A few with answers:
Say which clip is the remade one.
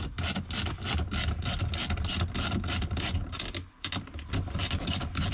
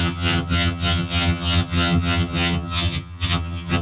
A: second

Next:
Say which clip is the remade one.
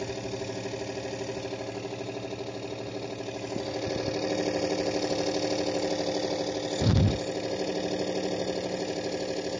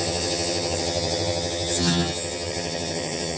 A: second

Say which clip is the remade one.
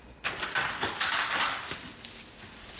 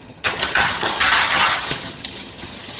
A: second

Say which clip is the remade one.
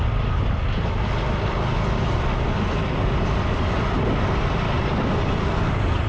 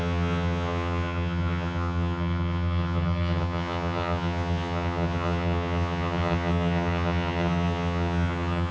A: second